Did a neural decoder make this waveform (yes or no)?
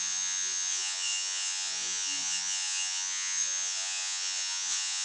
yes